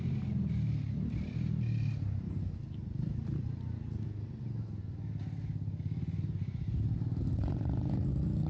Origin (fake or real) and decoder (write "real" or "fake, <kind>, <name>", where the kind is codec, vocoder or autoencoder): real